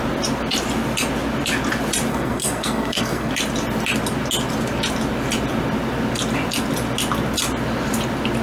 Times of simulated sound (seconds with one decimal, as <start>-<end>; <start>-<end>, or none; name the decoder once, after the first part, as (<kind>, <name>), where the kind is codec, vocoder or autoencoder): 2.1-3.3 (codec, SNAC)